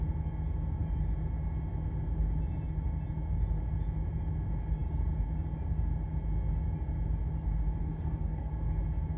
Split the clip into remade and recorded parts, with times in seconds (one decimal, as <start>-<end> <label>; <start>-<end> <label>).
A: 0.0-7.8 recorded; 7.8-8.5 remade; 8.5-9.2 recorded